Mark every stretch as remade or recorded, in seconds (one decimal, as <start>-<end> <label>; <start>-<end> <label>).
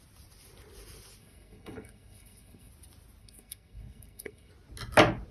0.0-1.2 recorded; 1.2-2.7 remade; 2.7-3.2 recorded; 3.2-4.5 remade; 4.5-5.3 recorded